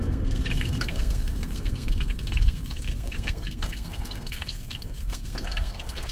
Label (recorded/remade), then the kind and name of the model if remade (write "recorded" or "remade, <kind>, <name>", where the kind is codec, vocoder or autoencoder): remade, codec, SNAC